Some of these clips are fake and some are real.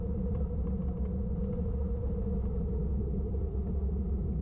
real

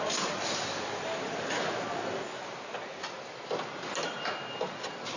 real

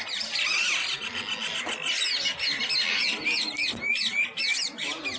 real